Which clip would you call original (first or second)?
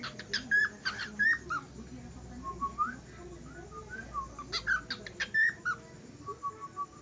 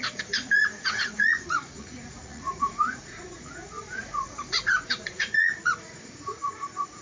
first